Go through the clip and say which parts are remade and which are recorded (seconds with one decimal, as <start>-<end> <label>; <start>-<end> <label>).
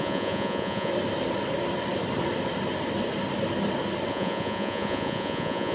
0.0-0.9 remade; 0.9-4.1 recorded; 4.1-5.7 remade